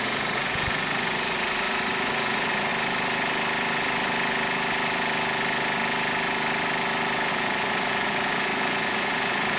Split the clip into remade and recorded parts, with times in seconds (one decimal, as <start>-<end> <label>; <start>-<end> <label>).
0.0-2.7 remade; 2.7-7.3 recorded; 7.3-9.6 remade